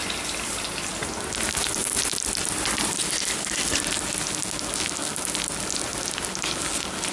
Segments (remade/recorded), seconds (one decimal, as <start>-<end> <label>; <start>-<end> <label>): 0.0-0.9 remade; 0.9-1.8 recorded; 1.8-2.9 remade; 2.9-7.1 recorded